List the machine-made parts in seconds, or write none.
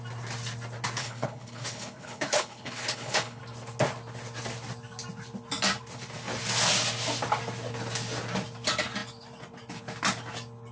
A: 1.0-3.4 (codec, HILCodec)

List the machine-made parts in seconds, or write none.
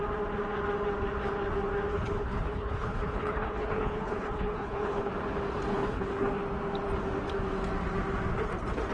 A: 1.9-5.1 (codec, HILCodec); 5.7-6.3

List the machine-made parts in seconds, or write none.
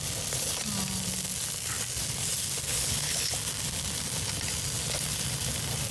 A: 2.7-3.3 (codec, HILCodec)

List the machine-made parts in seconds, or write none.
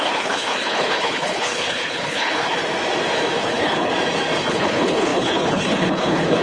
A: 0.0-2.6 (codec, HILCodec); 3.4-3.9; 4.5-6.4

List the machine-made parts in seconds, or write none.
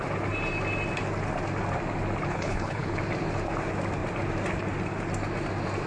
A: 2.3-3.0 (codec, HILCodec)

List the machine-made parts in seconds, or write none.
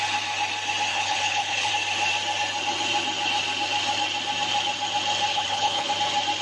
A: 0.9-1.7 (codec, HILCodec); 5.3-5.9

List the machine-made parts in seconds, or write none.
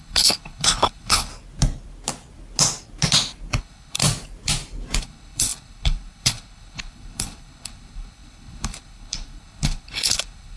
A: 0.0-1.3 (codec, HILCodec); 3.6-4.0; 5.0-10.6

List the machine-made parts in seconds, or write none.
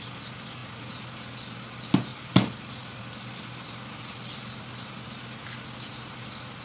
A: none